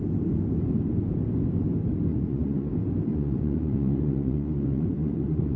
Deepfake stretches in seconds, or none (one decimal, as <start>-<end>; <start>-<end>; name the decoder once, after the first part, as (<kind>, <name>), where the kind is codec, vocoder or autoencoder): 2.1-2.7 (vocoder, Vocos); 3.1-5.6

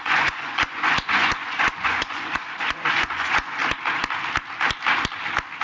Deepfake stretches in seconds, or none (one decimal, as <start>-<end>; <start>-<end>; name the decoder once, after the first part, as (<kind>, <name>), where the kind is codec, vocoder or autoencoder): 0.0-3.6 (vocoder, Vocos)